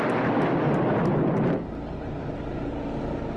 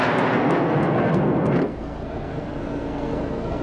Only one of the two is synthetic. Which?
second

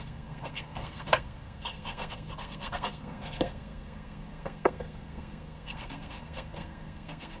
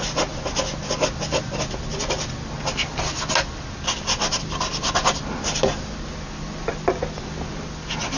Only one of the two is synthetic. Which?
first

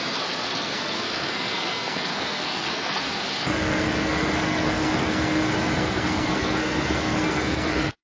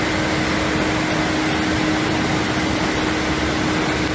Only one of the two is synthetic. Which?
first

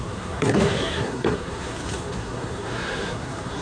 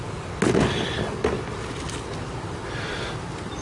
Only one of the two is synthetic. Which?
first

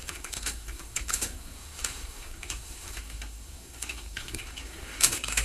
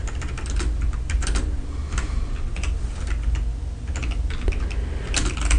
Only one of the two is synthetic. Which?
first